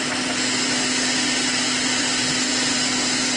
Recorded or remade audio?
recorded